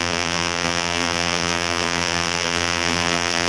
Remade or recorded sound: remade